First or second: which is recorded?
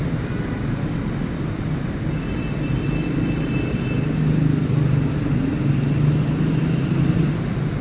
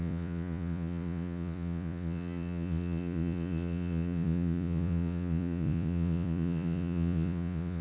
first